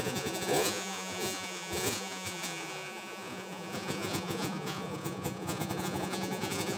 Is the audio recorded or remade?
remade